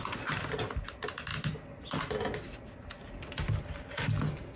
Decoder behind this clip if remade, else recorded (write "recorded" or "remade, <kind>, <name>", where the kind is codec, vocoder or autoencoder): recorded